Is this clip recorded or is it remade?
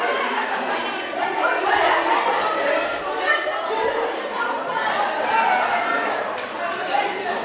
recorded